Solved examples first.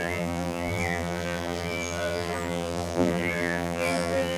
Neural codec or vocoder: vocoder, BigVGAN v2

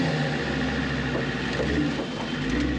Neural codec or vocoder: none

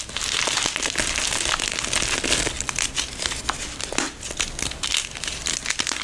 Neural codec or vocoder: none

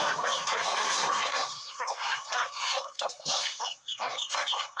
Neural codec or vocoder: codec, SNAC